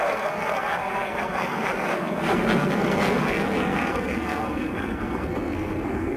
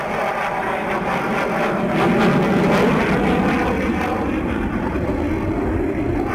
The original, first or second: second